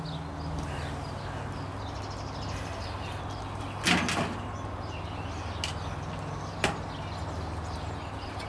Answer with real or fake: real